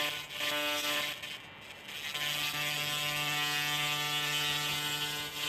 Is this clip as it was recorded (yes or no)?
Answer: yes